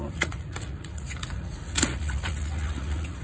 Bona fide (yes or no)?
no